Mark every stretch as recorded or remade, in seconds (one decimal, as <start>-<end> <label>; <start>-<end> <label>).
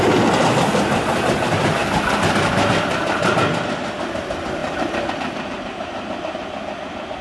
0.0-4.6 recorded; 4.6-5.1 remade; 5.1-7.2 recorded